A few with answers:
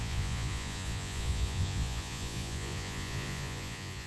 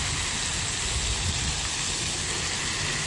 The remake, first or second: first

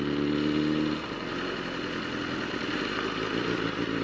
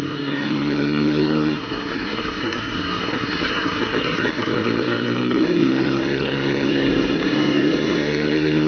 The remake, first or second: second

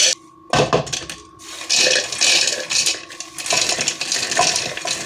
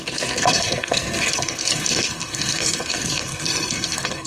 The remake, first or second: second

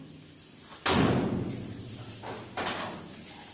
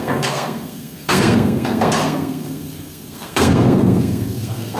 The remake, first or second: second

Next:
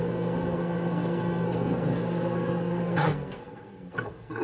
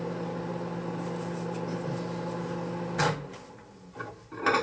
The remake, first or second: first